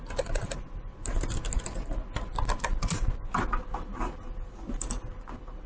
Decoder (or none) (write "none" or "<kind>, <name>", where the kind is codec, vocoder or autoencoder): none